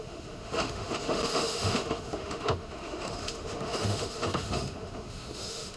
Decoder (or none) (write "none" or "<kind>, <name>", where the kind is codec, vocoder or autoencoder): autoencoder, DAC-VAE